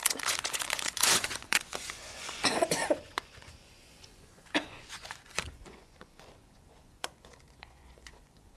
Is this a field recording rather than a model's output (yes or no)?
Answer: no